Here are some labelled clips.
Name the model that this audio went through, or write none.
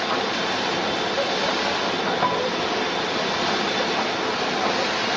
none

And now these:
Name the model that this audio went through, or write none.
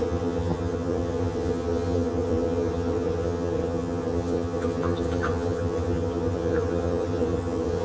vocoder, HiFi-GAN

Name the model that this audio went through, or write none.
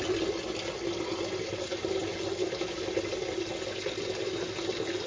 none